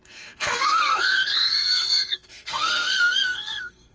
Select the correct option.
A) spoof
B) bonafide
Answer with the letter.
A